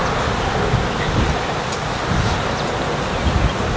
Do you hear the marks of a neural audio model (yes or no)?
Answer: no